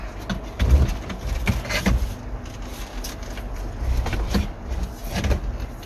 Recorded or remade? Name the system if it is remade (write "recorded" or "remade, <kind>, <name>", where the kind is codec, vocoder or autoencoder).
recorded